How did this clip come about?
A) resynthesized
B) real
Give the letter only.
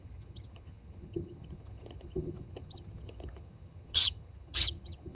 A